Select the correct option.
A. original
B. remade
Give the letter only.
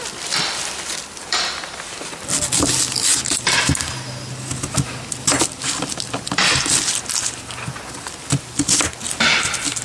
A